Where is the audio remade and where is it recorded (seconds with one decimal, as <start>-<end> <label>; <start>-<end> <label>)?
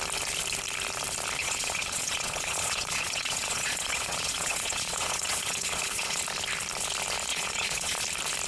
0.0-1.4 recorded; 1.4-6.2 remade; 6.2-7.3 recorded; 7.3-8.0 remade; 8.0-8.5 recorded